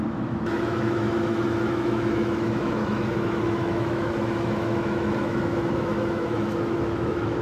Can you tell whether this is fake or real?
fake